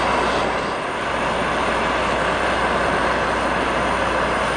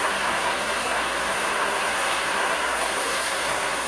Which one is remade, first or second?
second